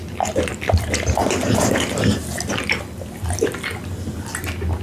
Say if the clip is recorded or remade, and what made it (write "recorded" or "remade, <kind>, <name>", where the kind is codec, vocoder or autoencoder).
recorded